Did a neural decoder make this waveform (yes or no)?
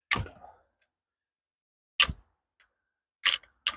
no